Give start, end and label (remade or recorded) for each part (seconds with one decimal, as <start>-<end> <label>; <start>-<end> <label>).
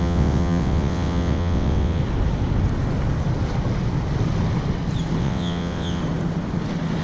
0.0-2.0 remade; 2.0-5.2 recorded; 5.2-6.0 remade; 6.0-7.0 recorded